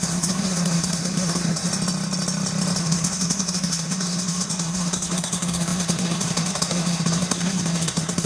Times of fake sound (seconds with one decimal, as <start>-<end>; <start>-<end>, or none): 0.0-1.7; 2.8-8.3